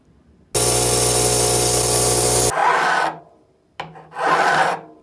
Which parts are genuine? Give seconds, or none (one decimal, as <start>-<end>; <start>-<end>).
0.0-5.0